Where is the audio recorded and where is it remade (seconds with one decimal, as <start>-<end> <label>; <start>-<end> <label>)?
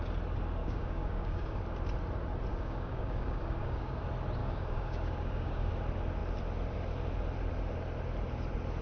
0.0-0.6 recorded; 0.6-1.6 remade; 1.6-2.5 recorded; 2.5-4.0 remade; 4.0-4.4 recorded; 4.4-5.7 remade; 5.7-8.8 recorded